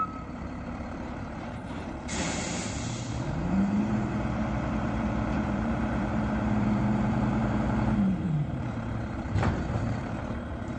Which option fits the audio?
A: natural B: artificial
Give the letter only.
B